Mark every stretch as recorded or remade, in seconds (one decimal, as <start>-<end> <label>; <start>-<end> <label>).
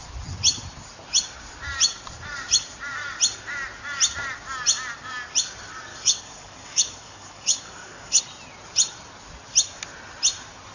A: 0.0-5.9 recorded; 5.9-8.2 remade; 8.2-10.7 recorded